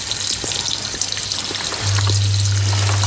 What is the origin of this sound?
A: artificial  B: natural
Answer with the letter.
B